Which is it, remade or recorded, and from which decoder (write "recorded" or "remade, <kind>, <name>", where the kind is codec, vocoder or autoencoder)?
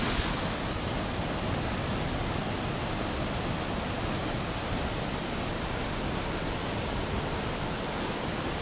recorded